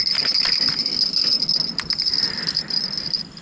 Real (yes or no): yes